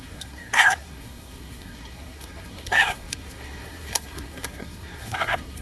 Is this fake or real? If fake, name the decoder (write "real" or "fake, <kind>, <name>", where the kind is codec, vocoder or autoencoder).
fake, codec, SNAC